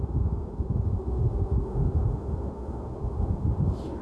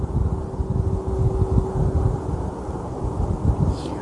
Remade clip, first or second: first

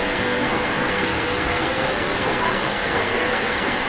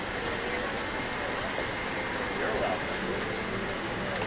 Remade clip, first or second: first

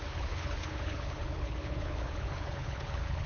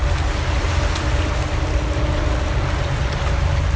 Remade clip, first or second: first